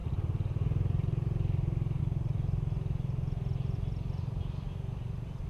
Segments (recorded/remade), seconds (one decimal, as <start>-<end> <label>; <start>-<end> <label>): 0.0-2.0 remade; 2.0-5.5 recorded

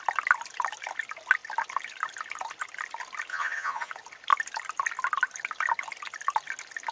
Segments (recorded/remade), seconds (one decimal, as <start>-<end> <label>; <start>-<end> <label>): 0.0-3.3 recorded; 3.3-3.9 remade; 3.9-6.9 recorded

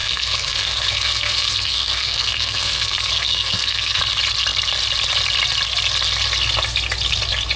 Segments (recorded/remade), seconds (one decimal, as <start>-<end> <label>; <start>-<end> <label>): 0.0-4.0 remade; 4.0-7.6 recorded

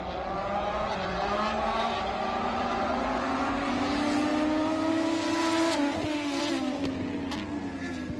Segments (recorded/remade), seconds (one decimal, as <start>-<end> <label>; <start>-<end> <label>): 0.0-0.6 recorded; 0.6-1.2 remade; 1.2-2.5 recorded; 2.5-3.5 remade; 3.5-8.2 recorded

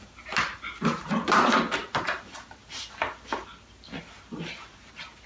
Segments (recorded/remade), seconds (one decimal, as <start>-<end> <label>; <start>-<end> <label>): 0.0-5.3 recorded

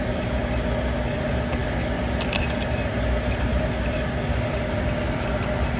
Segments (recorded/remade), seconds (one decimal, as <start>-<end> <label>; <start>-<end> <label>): 0.0-5.8 recorded